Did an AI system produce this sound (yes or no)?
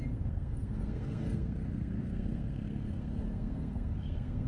yes